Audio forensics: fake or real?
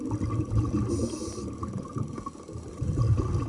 real